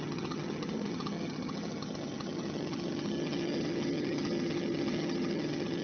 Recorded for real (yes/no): no